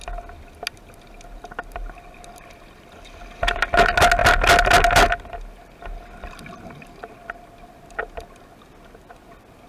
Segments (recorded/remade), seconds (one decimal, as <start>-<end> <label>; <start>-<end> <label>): 0.0-9.7 recorded

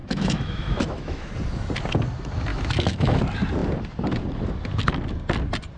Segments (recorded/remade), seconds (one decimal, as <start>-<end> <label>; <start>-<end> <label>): 0.0-1.3 remade; 1.3-2.5 recorded; 2.5-3.2 remade; 3.2-5.8 recorded